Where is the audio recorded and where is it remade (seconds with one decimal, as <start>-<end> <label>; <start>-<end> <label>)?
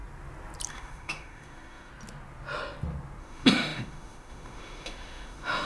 0.0-0.7 recorded; 0.7-1.9 remade; 1.9-3.2 recorded; 3.2-5.6 remade